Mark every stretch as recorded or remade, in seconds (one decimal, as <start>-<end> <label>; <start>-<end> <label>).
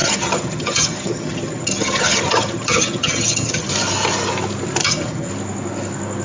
0.0-3.7 remade; 3.7-4.8 recorded; 4.8-5.3 remade; 5.3-6.2 recorded